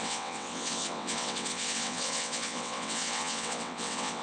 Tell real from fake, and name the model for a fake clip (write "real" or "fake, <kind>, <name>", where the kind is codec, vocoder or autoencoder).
fake, vocoder, WaveNeXt